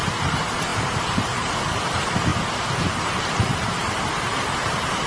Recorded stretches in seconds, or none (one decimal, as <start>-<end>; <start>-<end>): 2.3-3.0